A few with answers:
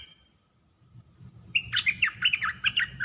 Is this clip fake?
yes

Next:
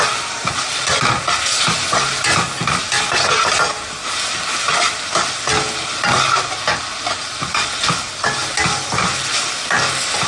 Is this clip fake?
no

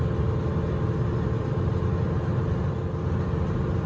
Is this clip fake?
no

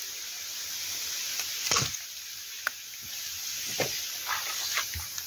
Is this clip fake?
no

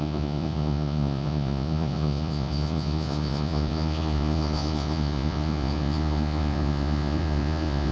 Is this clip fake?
yes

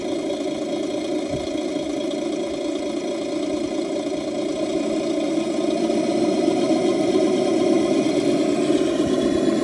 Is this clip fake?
no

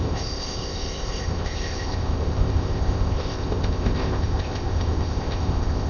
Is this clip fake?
yes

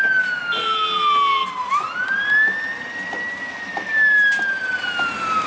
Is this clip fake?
no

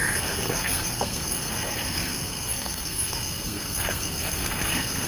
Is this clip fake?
yes